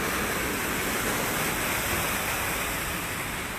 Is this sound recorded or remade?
recorded